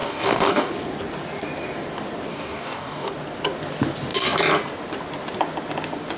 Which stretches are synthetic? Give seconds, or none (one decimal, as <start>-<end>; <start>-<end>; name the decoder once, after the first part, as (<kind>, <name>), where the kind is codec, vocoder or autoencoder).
0.0-0.7 (codec, DAC); 2.3-3.1